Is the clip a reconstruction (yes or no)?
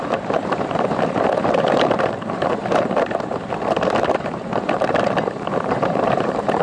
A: yes